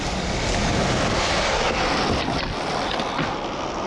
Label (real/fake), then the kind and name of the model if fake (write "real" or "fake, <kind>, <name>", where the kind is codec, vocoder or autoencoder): real